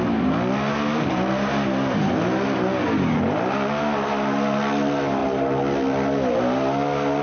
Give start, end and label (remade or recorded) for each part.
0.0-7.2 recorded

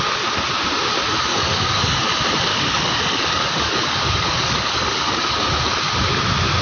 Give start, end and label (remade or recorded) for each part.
0.0-1.3 recorded; 1.3-2.0 remade; 2.0-2.5 recorded; 2.5-5.5 remade; 5.5-6.6 recorded

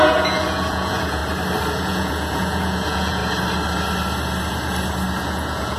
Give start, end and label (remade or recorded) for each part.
0.0-1.2 remade; 1.2-1.7 recorded; 1.7-3.2 remade; 3.2-5.2 recorded; 5.2-5.8 remade

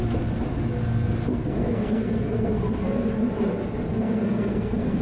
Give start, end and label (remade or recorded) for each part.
0.0-1.3 recorded; 1.3-2.6 remade; 2.6-3.9 recorded; 3.9-5.0 remade

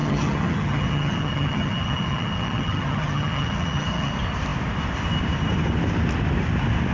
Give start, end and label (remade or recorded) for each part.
0.0-4.1 remade; 4.1-6.9 recorded